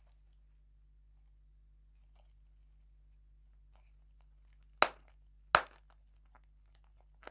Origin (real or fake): real